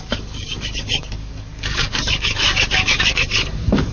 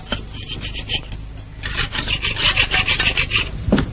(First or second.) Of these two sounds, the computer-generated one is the first